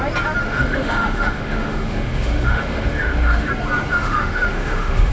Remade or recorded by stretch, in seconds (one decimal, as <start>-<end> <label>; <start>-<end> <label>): 0.0-0.4 recorded; 0.4-3.5 remade; 3.5-3.9 recorded; 3.9-5.1 remade

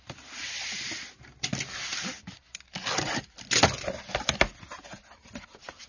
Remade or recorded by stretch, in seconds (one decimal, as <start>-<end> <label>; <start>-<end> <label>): 0.0-5.9 recorded

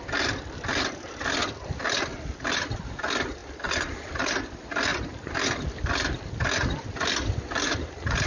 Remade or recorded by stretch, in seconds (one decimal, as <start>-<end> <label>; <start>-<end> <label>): 0.0-8.3 recorded